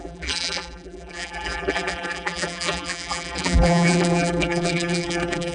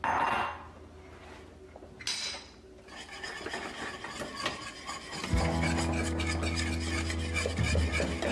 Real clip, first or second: second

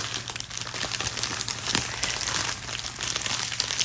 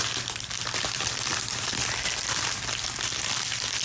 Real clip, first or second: first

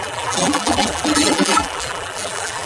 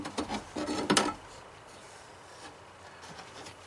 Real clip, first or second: second